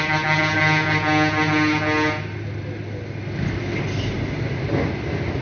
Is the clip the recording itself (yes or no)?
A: yes